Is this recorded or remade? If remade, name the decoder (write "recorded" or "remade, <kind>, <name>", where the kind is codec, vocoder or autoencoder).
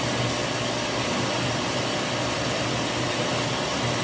recorded